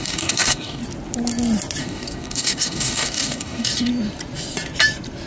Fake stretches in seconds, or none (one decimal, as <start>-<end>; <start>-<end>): 0.0-0.8; 1.8-3.9